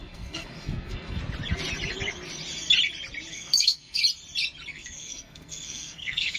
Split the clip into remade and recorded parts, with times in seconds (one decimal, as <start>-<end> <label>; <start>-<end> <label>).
0.0-1.2 remade; 1.2-3.3 recorded; 3.3-4.0 remade; 4.0-4.7 recorded; 4.7-6.4 remade